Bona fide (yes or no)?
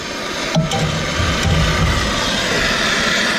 yes